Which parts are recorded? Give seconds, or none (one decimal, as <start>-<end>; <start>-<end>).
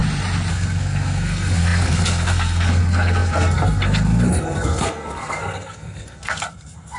0.0-0.5